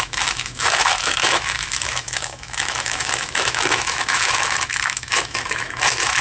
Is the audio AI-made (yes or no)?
yes